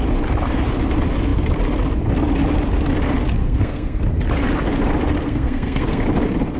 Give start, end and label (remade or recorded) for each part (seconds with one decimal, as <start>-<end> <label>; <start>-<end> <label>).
0.0-3.4 recorded; 3.4-4.0 remade; 4.0-5.2 recorded; 5.2-6.0 remade; 6.0-6.6 recorded